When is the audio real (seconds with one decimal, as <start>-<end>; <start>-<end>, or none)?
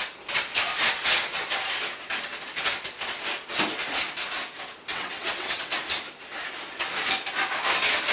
0.0-4.9; 5.7-8.1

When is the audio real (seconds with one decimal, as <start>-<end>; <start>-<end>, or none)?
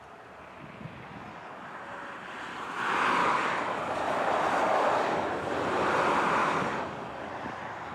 0.0-1.3; 1.8-3.2; 4.3-4.7; 5.3-6.4; 7.3-7.9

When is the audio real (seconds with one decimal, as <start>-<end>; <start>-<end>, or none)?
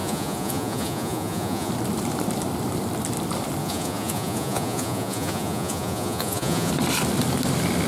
1.7-3.6; 6.7-7.9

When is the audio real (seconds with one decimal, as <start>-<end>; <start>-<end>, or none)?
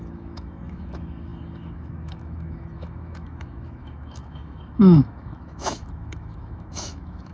none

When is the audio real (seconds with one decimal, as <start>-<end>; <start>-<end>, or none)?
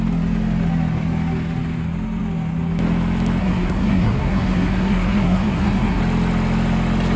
0.0-3.4; 6.0-7.2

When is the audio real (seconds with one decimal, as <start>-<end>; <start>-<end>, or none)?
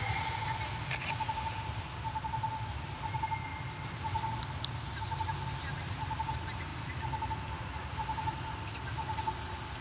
0.0-9.8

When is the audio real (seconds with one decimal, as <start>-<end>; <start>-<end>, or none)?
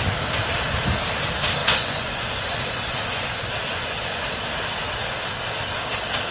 0.0-1.6; 4.2-6.3